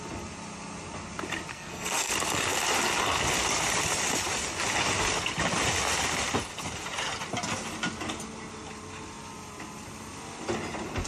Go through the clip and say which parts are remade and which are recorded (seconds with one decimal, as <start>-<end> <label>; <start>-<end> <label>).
0.0-1.5 recorded; 1.5-2.1 remade; 2.1-11.1 recorded